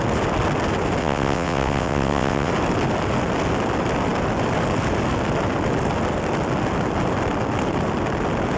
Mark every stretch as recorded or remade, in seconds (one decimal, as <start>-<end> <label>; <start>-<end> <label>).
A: 0.0-1.0 recorded; 1.0-2.5 remade; 2.5-8.6 recorded